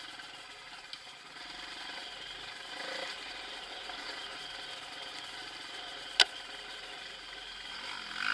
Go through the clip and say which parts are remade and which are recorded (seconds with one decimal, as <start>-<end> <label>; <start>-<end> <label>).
0.0-8.3 recorded